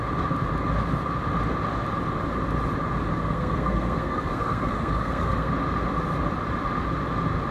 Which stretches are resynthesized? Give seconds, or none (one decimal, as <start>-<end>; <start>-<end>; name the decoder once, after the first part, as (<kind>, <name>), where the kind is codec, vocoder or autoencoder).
3.1-5.5 (codec, SNAC)